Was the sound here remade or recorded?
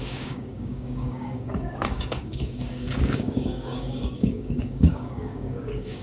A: remade